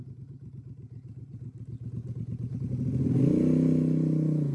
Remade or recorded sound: recorded